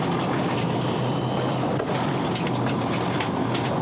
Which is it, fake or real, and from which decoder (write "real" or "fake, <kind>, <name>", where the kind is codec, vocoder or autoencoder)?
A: real